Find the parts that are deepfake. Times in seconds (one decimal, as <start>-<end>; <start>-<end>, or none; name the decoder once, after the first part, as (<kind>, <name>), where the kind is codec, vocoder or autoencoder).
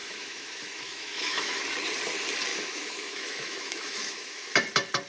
0.0-1.6 (autoencoder, DAC-VAE); 2.5-4.5